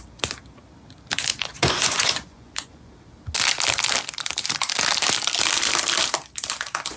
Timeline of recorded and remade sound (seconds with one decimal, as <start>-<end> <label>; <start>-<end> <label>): 0.0-1.3 recorded; 1.3-2.9 remade; 2.9-7.0 recorded